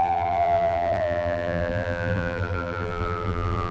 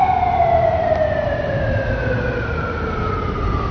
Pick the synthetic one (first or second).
first